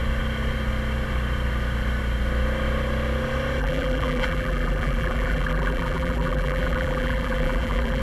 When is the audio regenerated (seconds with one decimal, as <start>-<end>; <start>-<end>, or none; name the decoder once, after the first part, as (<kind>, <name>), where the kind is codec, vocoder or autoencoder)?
3.6-8.0 (vocoder, BigVGAN v2)